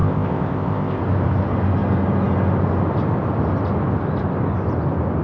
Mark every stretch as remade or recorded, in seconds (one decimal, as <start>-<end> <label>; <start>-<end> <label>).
0.0-1.0 remade; 1.0-5.2 recorded